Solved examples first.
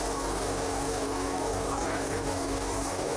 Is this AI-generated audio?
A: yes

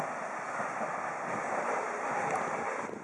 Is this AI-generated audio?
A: no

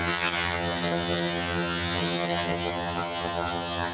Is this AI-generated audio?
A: yes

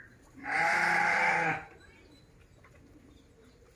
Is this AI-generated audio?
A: no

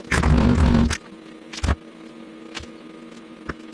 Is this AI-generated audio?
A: no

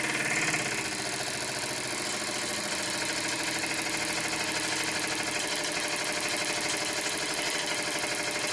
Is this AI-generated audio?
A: no